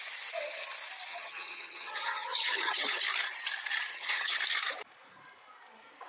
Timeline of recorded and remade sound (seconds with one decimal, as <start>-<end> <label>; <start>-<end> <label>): 0.0-1.1 recorded; 1.1-3.0 remade; 3.0-3.9 recorded; 3.9-4.4 remade; 4.4-6.1 recorded